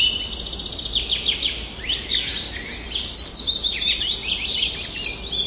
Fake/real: real